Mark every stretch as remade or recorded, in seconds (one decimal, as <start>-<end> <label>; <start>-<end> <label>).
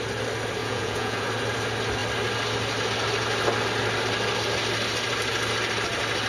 0.0-0.6 recorded; 0.6-1.2 remade; 1.2-6.3 recorded